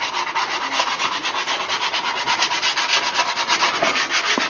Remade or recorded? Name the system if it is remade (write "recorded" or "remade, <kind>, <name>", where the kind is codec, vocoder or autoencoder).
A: recorded